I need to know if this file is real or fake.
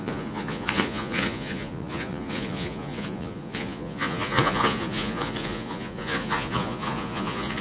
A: fake